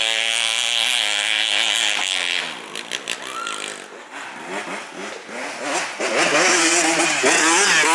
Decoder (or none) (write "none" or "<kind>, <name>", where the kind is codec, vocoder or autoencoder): none